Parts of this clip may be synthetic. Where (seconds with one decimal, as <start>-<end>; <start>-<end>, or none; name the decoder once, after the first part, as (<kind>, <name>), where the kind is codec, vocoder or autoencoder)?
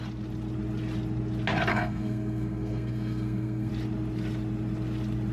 1.7-3.7 (codec, SNAC)